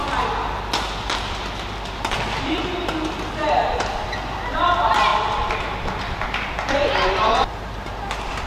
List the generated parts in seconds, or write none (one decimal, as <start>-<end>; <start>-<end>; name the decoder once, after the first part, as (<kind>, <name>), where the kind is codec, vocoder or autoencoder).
1.2-8.5 (vocoder, BigVGAN v2)